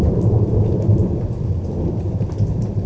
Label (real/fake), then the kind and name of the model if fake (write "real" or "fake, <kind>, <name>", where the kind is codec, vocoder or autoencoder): fake, vocoder, BigVGAN v2